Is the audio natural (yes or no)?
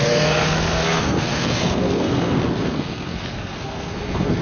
no